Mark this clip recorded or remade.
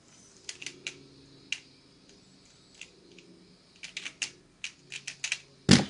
recorded